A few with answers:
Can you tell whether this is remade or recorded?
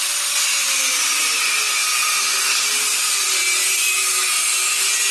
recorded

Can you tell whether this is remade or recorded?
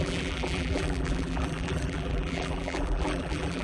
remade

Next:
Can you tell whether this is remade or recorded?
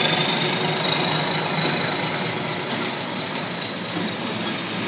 recorded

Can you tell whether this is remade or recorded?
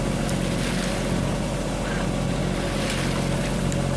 recorded